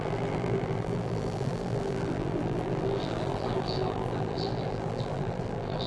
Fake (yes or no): yes